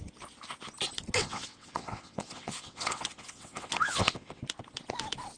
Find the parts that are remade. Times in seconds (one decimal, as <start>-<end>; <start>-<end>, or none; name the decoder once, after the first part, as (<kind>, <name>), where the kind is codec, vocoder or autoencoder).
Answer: 1.2-4.4 (vocoder, WaveNeXt)